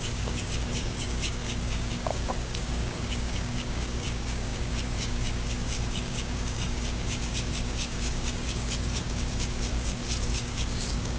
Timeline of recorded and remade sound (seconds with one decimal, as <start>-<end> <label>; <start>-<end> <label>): 0.0-11.2 remade